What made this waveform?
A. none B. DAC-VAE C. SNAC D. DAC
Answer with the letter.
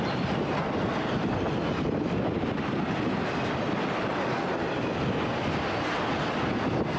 A